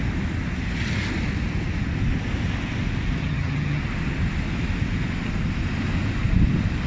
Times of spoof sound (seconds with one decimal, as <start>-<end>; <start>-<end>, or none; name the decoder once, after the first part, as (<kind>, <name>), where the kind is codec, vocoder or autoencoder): 3.2-3.8 (vocoder, HiFi-GAN)